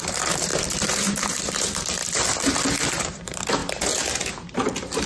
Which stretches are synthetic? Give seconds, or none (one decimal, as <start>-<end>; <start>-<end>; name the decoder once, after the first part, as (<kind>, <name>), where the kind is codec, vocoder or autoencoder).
0.0-2.0 (vocoder, BigVGAN v2); 2.7-5.1